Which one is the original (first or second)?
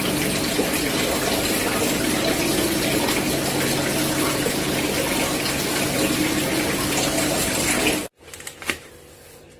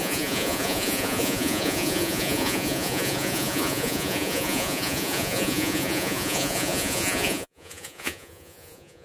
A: first